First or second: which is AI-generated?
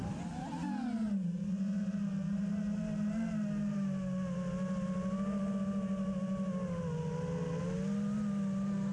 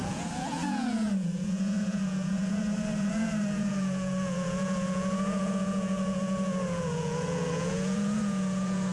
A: second